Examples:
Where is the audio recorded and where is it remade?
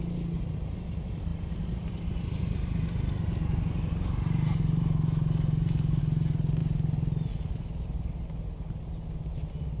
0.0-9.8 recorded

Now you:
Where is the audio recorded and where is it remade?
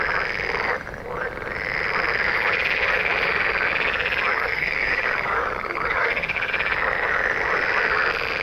0.0-4.3 recorded; 4.3-6.5 remade; 6.5-8.4 recorded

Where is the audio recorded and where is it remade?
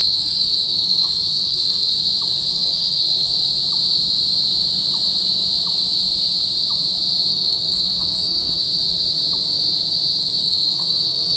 0.0-1.9 remade; 1.9-2.5 recorded; 2.5-3.3 remade; 3.3-7.3 recorded; 7.3-8.6 remade; 8.6-10.4 recorded; 10.4-11.4 remade